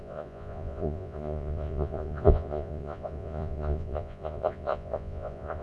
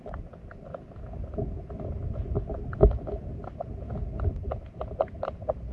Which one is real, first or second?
second